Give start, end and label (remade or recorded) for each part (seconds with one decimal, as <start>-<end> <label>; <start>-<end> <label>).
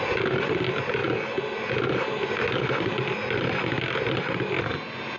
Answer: 0.0-5.2 recorded